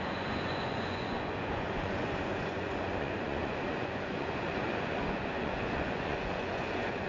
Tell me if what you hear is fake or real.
fake